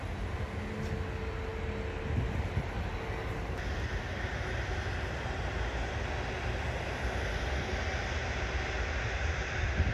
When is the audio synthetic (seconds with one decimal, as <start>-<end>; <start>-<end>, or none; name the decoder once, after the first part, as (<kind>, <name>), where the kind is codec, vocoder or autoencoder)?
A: none